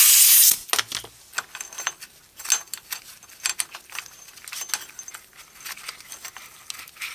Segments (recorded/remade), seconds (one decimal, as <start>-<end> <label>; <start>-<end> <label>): 0.0-7.1 recorded